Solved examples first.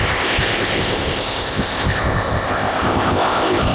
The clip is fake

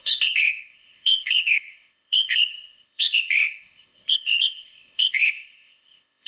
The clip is fake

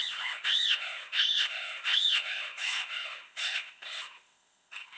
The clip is fake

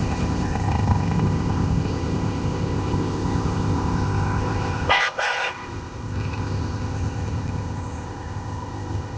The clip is fake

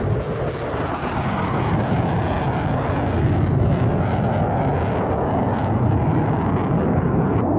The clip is real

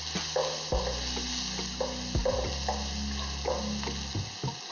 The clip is real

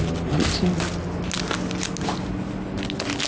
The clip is real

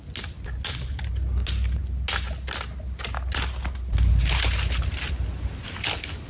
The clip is real